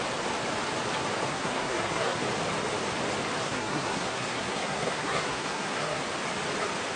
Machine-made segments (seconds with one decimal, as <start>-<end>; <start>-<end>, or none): 1.3-2.2; 3.4-6.0